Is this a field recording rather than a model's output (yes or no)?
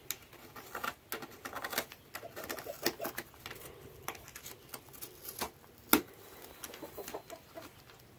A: yes